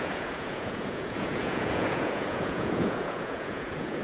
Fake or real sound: fake